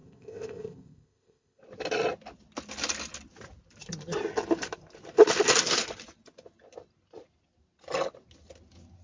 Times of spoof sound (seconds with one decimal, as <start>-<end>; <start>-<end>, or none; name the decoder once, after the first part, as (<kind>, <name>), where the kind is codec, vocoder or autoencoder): 0.0-1.6 (codec, ZipCodec)